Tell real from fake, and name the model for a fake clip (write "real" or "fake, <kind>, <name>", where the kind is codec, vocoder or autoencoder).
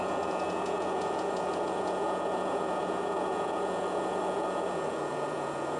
fake, vocoder, Vocos